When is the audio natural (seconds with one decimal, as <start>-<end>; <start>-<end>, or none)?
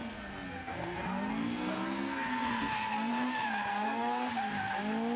3.1-3.7; 4.3-5.2